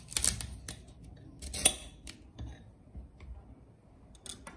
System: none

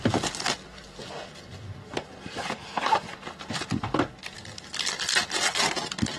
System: none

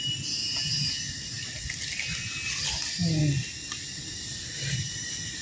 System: none